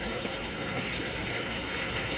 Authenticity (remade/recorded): remade